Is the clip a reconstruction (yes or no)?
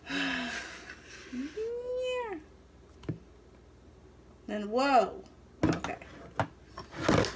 no